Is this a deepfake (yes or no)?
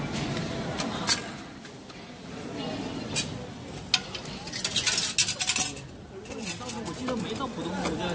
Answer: no